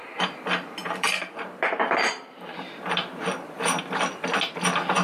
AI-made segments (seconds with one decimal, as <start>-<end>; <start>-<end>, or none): 0.8-3.8